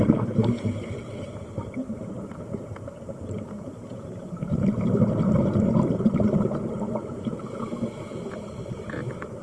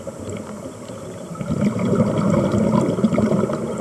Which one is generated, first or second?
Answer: first